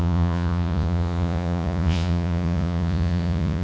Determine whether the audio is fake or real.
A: fake